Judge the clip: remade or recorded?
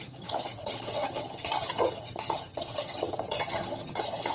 remade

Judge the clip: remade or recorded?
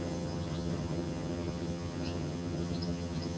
remade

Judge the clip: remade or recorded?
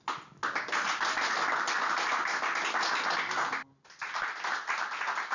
recorded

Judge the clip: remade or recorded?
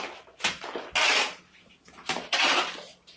recorded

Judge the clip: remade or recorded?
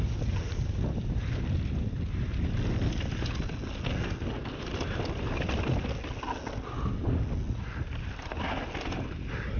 recorded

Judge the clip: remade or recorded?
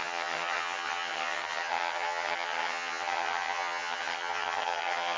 remade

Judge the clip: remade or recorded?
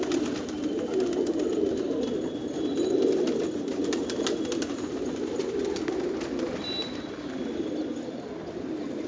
recorded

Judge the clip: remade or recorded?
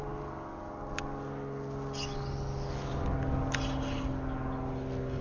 recorded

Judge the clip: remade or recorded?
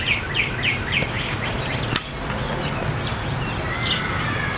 recorded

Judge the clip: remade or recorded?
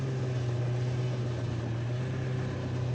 recorded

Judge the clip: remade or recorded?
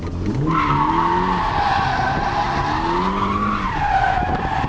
recorded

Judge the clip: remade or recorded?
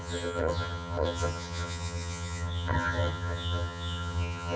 remade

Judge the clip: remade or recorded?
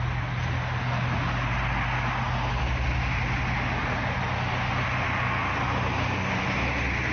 recorded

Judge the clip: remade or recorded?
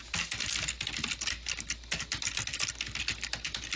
recorded